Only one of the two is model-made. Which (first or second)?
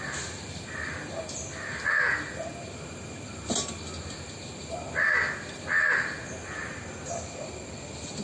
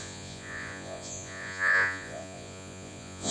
second